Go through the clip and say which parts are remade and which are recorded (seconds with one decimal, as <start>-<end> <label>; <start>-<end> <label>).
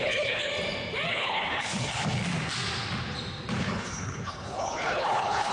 0.0-0.5 remade; 0.5-1.1 recorded; 1.1-2.2 remade; 2.2-3.6 recorded; 3.6-5.5 remade